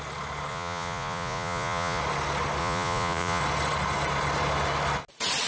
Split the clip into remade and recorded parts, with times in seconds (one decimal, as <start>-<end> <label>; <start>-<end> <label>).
0.0-0.5 recorded; 0.5-2.0 remade; 2.0-2.6 recorded; 2.6-3.4 remade; 3.4-5.5 recorded